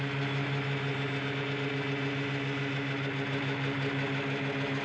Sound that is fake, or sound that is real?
real